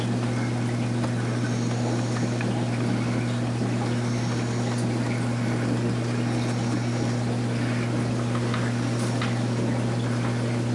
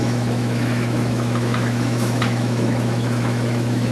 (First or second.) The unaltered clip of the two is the first